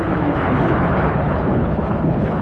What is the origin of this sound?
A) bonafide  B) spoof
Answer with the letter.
B